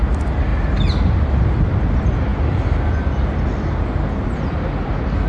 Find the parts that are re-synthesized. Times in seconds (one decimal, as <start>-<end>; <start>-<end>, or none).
none